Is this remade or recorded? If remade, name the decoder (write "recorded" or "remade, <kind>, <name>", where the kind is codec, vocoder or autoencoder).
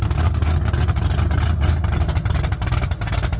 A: recorded